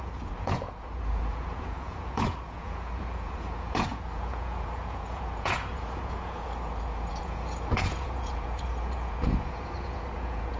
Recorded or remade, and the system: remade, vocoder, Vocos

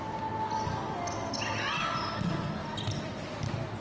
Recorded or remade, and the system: recorded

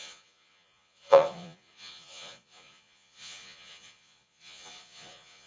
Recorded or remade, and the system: remade, vocoder, Vocos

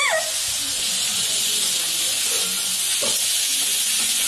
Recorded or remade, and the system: remade, vocoder, Vocos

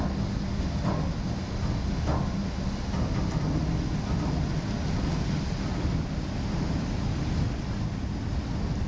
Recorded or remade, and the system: recorded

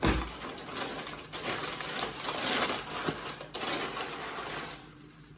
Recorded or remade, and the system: recorded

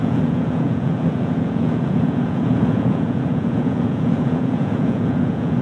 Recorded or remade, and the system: remade, vocoder, Vocos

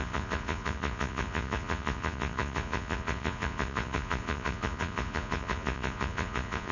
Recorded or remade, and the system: remade, vocoder, Vocos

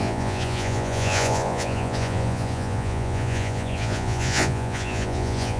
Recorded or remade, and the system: remade, vocoder, Vocos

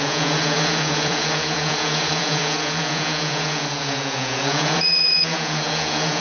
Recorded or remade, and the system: remade, vocoder, Vocos